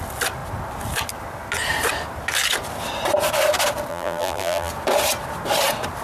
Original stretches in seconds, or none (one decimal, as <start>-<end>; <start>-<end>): 0.0-3.9; 4.7-6.0